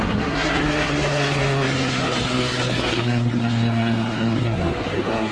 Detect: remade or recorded remade